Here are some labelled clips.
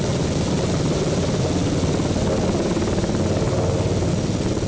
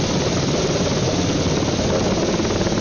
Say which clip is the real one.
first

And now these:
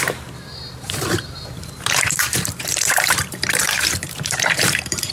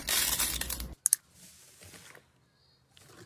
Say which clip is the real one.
second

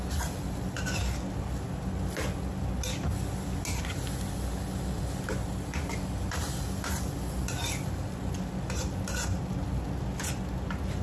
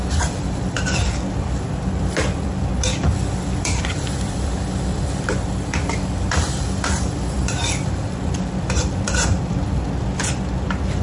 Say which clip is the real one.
first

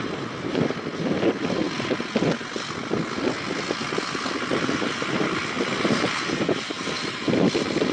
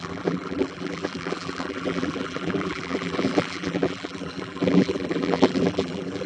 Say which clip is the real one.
first